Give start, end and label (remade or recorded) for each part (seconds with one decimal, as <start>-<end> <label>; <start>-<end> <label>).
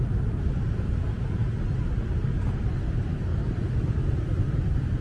0.0-3.3 recorded; 3.3-5.0 remade